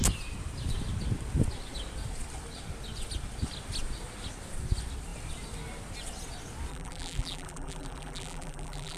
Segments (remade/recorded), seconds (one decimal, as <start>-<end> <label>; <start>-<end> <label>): 0.0-6.7 recorded; 6.7-9.0 remade